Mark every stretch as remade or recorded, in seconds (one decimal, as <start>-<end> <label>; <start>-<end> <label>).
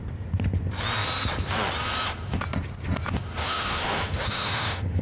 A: 0.0-3.4 recorded; 3.4-5.0 remade